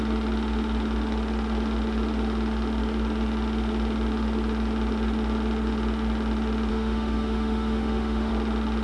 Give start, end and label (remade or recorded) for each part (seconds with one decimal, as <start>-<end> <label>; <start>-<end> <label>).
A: 0.0-6.7 recorded; 6.7-8.3 remade; 8.3-8.8 recorded